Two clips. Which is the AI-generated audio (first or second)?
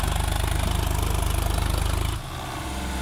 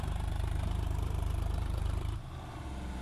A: second